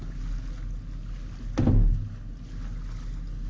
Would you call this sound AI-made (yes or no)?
no